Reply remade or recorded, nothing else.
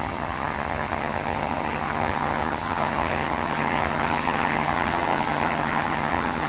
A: remade